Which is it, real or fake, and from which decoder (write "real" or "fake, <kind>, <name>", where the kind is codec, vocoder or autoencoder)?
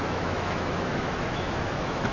fake, autoencoder, DAC-VAE